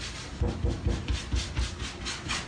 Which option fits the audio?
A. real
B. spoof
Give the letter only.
A